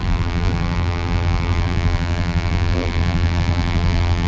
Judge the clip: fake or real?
fake